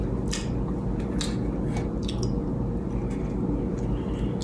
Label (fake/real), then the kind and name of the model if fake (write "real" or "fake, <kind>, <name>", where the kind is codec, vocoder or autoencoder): real